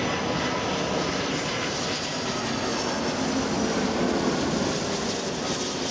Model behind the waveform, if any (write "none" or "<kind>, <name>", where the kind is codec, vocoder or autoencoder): none